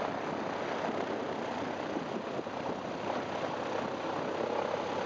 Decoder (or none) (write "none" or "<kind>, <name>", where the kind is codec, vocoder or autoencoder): none